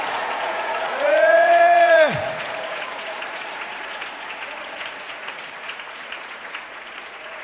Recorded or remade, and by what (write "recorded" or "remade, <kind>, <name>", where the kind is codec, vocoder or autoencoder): remade, vocoder, Vocos